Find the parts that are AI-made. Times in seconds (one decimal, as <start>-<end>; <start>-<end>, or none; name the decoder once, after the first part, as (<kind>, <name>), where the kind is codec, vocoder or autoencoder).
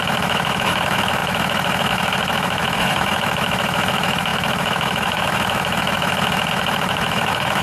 0.0-7.6 (autoencoder, DAC-VAE)